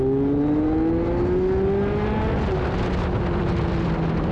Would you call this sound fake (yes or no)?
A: no